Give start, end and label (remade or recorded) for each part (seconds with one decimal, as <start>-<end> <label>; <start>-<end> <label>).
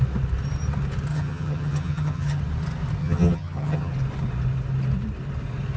0.0-1.1 recorded; 1.1-2.4 remade; 2.4-3.0 recorded; 3.0-3.9 remade; 3.9-5.8 recorded